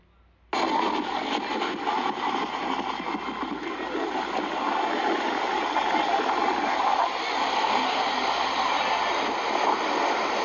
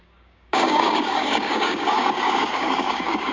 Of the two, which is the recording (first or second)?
first